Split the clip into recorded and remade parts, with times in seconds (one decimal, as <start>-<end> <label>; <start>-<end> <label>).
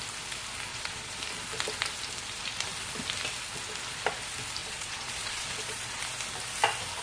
0.0-0.7 recorded; 0.7-1.2 remade; 1.2-4.6 recorded; 4.6-6.0 remade; 6.0-7.0 recorded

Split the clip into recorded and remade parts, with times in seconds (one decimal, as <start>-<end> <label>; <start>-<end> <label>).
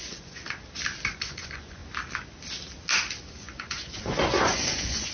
0.0-0.4 remade; 0.4-1.1 recorded; 1.1-1.8 remade; 1.8-3.3 recorded; 3.3-5.1 remade